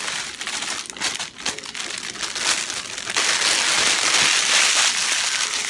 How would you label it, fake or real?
real